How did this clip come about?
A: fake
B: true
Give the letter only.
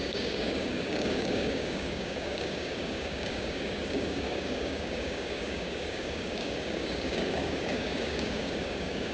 A